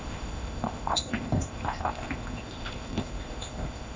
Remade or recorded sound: remade